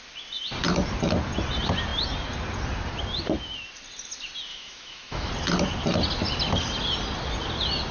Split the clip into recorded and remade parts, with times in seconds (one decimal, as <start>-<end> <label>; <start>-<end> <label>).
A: 0.0-4.5 recorded; 4.5-5.3 remade; 5.3-7.9 recorded